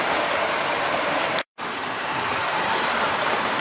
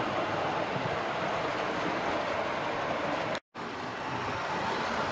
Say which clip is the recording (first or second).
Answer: second